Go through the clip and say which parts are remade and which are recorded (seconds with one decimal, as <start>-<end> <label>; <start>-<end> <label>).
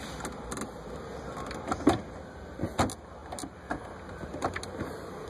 0.0-5.3 recorded